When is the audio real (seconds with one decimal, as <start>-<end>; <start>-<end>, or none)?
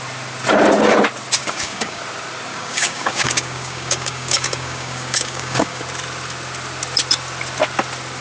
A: 0.0-1.4; 2.0-2.5; 5.8-8.2